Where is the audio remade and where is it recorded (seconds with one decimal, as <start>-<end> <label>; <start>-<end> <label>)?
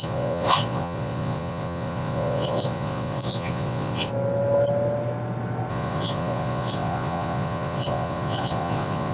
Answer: 0.0-4.1 remade; 4.1-5.7 recorded; 5.7-9.1 remade